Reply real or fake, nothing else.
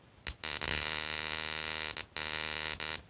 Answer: real